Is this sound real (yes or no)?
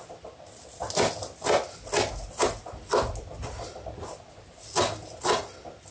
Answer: yes